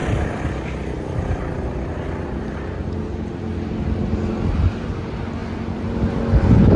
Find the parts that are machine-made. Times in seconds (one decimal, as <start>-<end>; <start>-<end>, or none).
0.0-3.0; 5.4-6.2